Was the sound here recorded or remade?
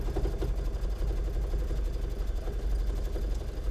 recorded